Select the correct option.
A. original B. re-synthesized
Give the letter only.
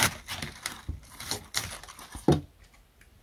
A